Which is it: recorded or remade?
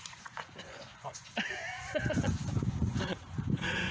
remade